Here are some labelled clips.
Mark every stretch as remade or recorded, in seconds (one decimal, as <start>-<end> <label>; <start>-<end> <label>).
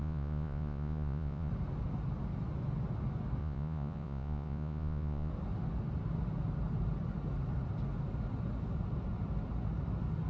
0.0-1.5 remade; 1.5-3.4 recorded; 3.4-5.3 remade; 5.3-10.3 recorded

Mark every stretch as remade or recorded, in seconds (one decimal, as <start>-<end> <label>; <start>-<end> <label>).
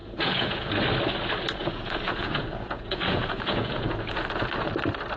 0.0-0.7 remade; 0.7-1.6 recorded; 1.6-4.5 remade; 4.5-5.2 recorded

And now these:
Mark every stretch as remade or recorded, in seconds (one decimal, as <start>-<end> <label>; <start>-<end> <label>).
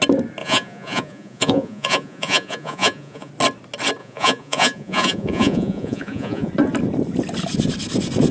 0.0-0.4 recorded; 0.4-3.3 remade; 3.3-4.0 recorded; 4.0-6.5 remade; 6.5-8.3 recorded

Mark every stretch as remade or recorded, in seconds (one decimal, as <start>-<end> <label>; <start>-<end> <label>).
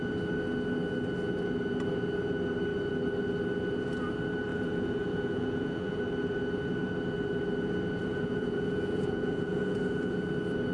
0.0-4.5 recorded; 4.5-6.0 remade; 6.0-8.0 recorded; 8.0-10.1 remade; 10.1-10.7 recorded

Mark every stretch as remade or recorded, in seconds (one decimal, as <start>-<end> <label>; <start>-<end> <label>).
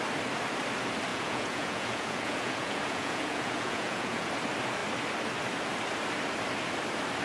0.0-1.1 recorded; 1.1-4.3 remade; 4.3-7.2 recorded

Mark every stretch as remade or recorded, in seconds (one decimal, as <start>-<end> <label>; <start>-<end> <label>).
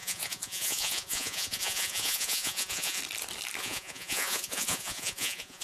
0.0-3.0 remade; 3.0-3.6 recorded; 3.6-5.6 remade